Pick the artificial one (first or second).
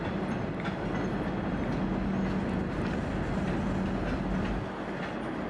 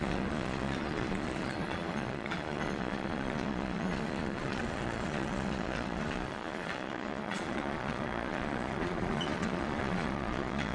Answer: second